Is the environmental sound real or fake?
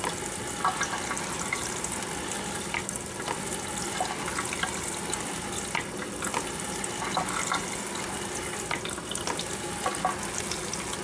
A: real